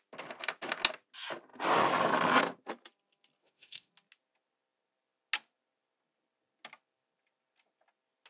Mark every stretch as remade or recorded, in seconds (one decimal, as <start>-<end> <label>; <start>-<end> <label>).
0.0-3.4 recorded; 3.4-3.9 remade; 3.9-8.3 recorded